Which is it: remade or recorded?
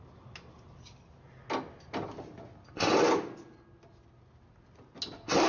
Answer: recorded